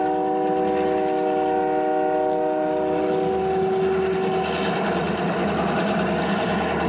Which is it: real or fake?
real